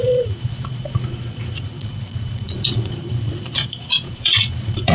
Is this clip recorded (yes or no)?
no